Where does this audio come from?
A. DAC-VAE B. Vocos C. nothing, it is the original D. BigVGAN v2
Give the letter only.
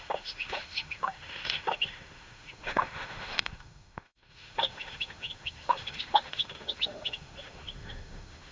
A